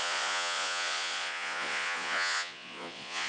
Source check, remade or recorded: remade